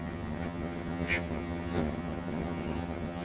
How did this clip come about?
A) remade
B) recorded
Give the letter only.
A